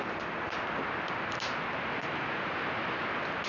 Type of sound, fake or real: real